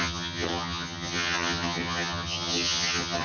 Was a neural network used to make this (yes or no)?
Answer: yes